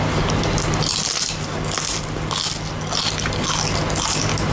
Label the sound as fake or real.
real